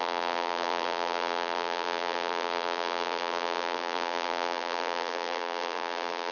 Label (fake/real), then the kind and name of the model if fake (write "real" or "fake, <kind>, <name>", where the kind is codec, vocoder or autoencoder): fake, vocoder, BigVGAN v2